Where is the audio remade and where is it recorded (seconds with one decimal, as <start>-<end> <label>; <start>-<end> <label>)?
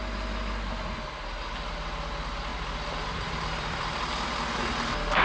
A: 0.0-2.5 recorded; 2.5-4.1 remade; 4.1-5.2 recorded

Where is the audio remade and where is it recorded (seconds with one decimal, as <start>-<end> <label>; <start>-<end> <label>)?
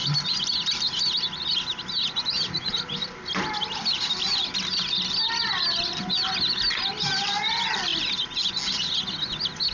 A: 0.0-9.7 recorded